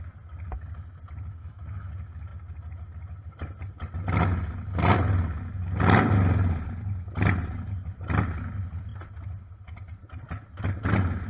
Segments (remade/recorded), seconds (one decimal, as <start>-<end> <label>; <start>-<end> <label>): 0.0-1.4 recorded; 1.4-1.9 remade; 1.9-11.3 recorded